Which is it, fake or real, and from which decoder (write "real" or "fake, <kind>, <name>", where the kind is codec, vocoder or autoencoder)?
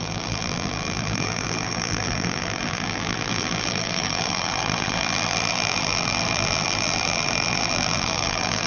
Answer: fake, vocoder, BigVGAN v2